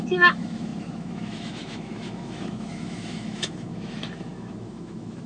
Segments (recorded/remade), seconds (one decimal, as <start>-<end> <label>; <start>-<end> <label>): 0.0-5.3 remade